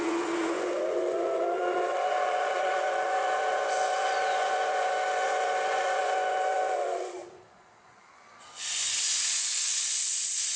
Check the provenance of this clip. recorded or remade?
remade